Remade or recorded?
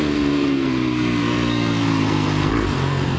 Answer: remade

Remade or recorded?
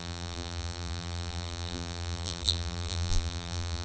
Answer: remade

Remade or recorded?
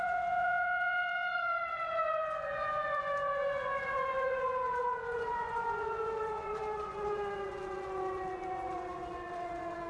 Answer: remade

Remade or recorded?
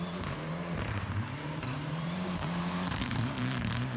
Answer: remade